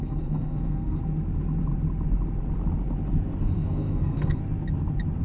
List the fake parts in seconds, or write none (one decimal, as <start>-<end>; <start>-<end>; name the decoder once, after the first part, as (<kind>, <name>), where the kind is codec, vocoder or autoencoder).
0.0-1.0 (codec, SNAC); 3.4-4.4